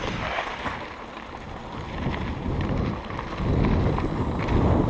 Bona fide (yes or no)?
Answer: yes